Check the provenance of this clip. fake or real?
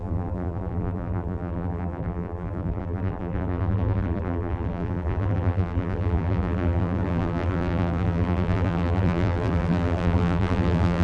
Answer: fake